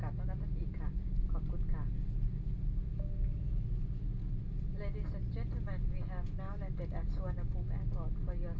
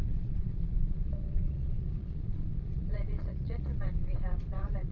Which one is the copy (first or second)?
second